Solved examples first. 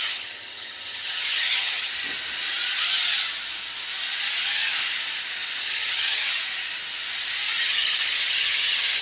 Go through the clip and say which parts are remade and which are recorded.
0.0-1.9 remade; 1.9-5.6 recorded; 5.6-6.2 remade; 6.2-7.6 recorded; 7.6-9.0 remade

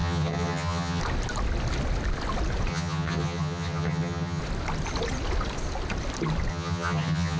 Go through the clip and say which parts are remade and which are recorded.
0.0-1.0 remade; 1.0-2.7 recorded; 2.7-4.4 remade; 4.4-6.5 recorded; 6.5-7.4 remade

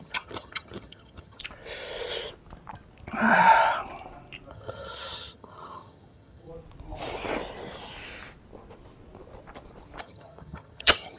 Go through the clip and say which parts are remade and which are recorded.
0.0-1.4 remade; 1.4-4.5 recorded; 4.5-6.5 remade; 6.5-10.0 recorded; 10.0-11.2 remade

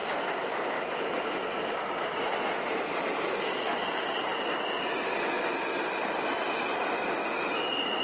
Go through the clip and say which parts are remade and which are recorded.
0.0-8.0 recorded

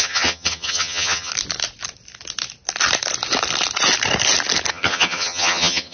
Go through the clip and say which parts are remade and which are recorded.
0.0-1.3 remade; 1.3-4.7 recorded; 4.7-5.9 remade

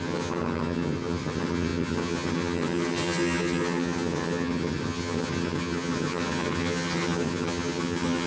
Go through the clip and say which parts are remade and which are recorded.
0.0-8.3 remade

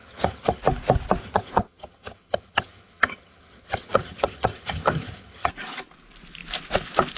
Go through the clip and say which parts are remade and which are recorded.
0.0-0.6 remade; 0.6-1.2 recorded; 1.2-5.5 remade; 5.5-7.2 recorded